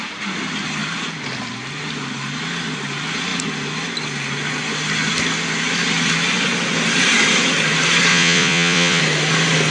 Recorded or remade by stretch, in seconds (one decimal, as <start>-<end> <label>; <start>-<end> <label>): 0.0-8.1 recorded; 8.1-9.0 remade; 9.0-9.7 recorded